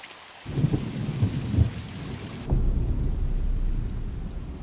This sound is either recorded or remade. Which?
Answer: recorded